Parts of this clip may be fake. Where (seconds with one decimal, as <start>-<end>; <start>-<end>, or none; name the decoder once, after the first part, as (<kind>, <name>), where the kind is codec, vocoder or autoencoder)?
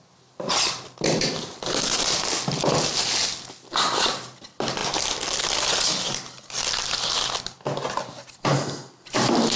none